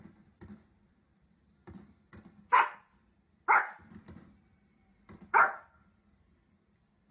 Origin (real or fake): fake